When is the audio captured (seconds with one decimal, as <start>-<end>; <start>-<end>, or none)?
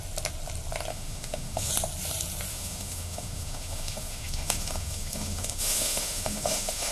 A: 0.0-0.9; 1.7-2.5